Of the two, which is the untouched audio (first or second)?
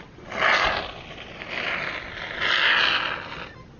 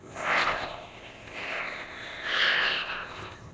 first